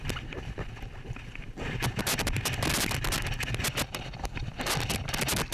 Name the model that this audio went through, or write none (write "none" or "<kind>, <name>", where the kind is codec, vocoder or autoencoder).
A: none